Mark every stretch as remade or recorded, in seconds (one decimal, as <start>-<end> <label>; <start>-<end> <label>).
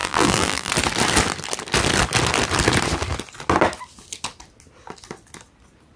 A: 0.0-0.7 remade; 0.7-6.0 recorded